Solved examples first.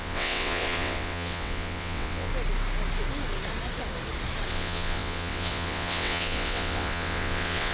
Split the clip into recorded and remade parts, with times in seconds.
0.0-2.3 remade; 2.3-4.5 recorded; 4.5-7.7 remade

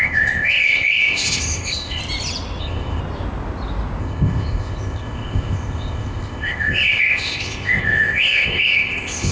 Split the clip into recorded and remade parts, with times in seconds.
0.0-2.0 remade; 2.0-2.6 recorded; 2.6-3.0 remade; 3.0-4.0 recorded; 4.0-9.3 remade

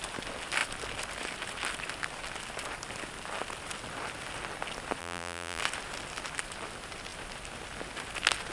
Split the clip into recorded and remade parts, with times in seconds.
0.0-5.0 recorded; 5.0-5.6 remade; 5.6-8.5 recorded

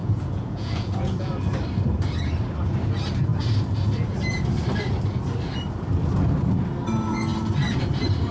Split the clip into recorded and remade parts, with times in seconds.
0.0-1.3 remade; 1.3-8.3 recorded

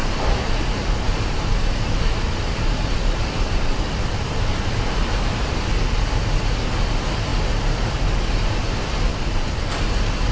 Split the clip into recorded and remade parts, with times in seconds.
0.0-4.9 remade; 4.9-9.1 recorded; 9.1-9.7 remade; 9.7-10.3 recorded

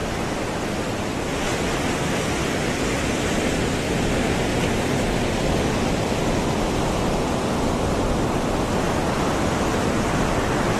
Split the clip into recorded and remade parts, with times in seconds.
0.0-10.8 recorded